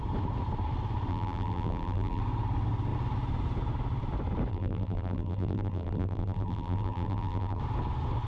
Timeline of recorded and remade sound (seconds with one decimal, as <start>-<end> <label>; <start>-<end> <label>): 0.0-1.1 recorded; 1.1-2.2 remade; 2.2-4.5 recorded; 4.5-7.6 remade; 7.6-8.3 recorded